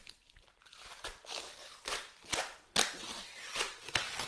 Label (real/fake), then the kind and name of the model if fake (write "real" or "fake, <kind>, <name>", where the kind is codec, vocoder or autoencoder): real